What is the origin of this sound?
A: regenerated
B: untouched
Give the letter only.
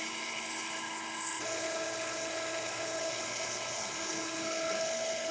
A